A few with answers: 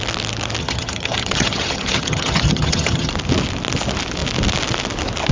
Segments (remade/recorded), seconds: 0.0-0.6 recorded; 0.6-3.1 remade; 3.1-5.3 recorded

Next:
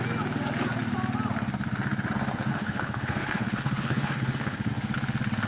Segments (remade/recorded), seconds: 0.0-2.5 recorded; 2.5-4.7 remade; 4.7-5.5 recorded